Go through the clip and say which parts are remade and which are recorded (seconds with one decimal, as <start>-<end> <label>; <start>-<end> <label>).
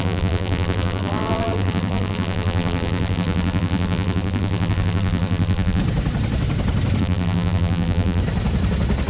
0.0-5.8 remade; 5.8-7.0 recorded; 7.0-8.2 remade; 8.2-9.1 recorded